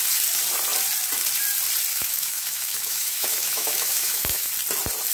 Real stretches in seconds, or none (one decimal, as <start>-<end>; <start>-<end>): 0.0-1.9; 4.5-5.1